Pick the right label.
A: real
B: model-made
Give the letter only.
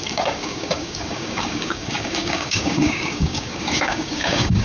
B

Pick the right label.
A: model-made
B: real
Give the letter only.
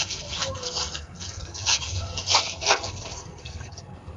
A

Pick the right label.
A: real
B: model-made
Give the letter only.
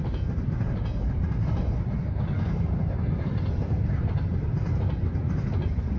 A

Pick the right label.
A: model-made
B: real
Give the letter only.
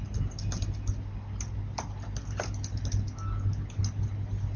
B